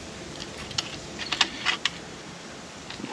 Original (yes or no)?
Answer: yes